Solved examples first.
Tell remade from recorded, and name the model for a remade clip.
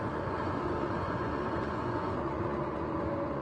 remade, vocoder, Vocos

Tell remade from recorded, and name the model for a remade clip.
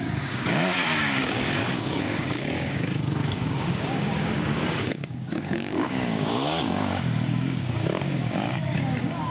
remade, codec, DAC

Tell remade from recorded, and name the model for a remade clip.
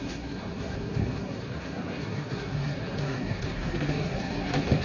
remade, codec, SNAC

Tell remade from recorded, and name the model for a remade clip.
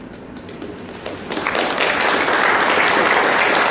recorded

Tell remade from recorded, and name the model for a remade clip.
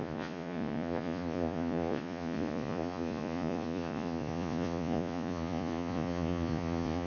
remade, vocoder, Vocos